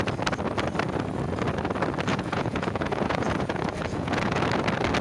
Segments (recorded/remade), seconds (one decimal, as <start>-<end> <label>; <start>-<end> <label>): 0.0-2.1 recorded; 2.1-4.4 remade; 4.4-5.0 recorded